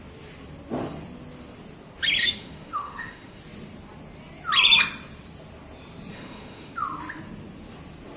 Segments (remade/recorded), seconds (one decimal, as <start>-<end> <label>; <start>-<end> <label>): 0.0-2.2 recorded; 2.2-3.4 remade; 3.4-6.1 recorded; 6.1-6.7 remade; 6.7-8.2 recorded